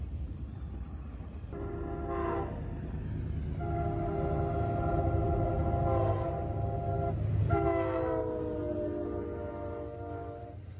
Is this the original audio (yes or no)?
yes